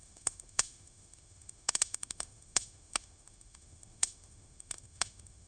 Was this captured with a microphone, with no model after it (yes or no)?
no